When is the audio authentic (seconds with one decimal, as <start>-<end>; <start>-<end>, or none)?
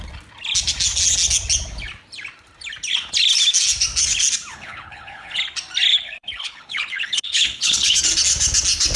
0.0-4.5; 5.4-5.9; 8.0-9.0